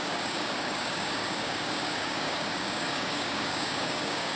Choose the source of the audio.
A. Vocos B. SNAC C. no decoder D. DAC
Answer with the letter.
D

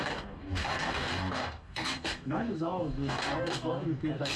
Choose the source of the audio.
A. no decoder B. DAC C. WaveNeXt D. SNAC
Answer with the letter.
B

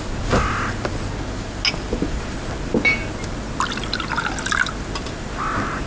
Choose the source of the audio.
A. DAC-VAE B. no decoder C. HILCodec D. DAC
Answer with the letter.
B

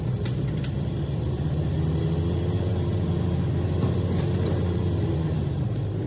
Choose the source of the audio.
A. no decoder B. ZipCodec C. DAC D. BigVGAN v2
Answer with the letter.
A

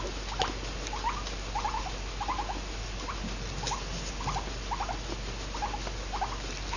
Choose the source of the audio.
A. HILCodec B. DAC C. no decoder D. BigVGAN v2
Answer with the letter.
C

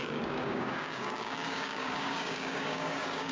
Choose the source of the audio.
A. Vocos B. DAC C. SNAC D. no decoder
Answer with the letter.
B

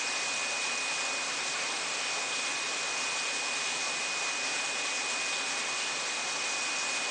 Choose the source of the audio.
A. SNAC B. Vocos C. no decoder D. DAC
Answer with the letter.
C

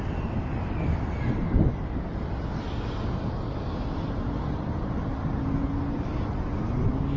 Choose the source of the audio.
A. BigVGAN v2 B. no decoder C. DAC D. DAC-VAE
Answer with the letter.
B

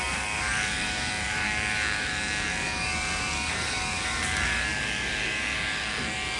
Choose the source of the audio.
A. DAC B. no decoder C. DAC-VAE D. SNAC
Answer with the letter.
A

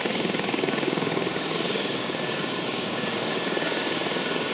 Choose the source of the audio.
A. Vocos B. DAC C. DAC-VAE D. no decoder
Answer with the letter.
B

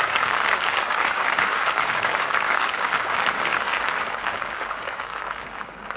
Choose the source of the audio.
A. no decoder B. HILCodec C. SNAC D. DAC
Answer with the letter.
D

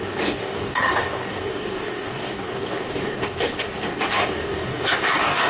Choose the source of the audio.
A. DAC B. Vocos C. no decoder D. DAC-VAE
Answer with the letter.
A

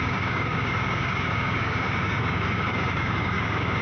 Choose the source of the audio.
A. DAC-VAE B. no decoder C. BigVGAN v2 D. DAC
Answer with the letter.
D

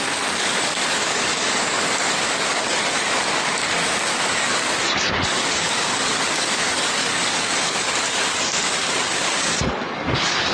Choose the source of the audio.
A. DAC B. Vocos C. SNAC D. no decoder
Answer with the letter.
A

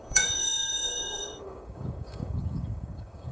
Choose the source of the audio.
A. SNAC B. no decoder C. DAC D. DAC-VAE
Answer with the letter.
C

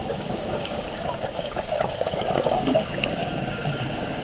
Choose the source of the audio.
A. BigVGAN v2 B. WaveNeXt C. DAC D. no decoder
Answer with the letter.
C